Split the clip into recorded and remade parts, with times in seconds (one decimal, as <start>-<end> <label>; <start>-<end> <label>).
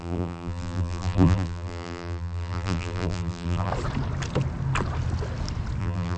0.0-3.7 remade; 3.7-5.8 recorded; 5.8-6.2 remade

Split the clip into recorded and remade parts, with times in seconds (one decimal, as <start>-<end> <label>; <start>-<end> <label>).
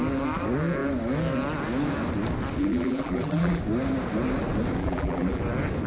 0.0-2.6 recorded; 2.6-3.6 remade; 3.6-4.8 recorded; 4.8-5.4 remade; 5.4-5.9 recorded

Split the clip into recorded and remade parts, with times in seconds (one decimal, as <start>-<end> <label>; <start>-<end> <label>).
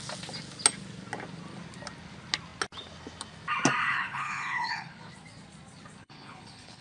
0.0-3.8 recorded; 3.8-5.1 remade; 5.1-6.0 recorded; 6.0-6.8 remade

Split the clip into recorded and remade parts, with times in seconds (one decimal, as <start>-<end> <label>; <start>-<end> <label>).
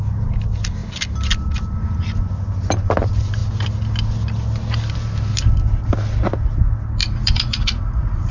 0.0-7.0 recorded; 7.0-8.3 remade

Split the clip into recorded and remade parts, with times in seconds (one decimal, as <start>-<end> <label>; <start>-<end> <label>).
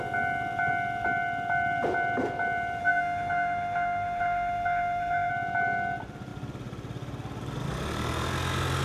0.0-2.8 recorded; 2.8-5.3 remade; 5.3-8.8 recorded